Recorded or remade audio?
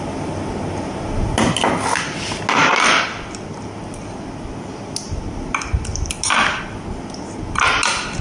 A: recorded